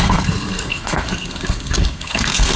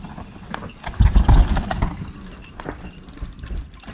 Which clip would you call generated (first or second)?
first